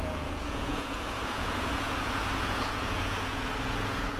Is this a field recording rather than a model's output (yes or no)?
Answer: no